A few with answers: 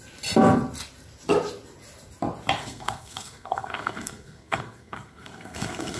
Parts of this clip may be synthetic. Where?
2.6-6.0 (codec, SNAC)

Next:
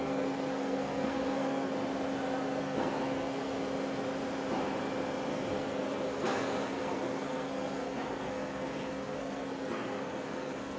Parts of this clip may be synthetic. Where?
0.0-1.7 (codec, SNAC); 2.6-3.6; 5.3-10.8